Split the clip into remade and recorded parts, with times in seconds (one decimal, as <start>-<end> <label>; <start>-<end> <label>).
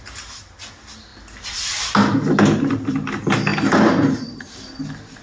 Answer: 0.0-5.2 recorded